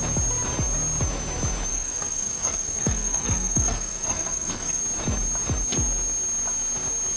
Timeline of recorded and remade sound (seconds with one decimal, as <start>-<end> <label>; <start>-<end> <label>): 0.0-1.7 recorded; 1.7-4.8 remade; 4.8-7.2 recorded